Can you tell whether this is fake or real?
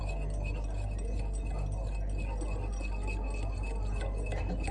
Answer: real